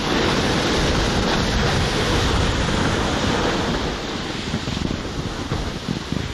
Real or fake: real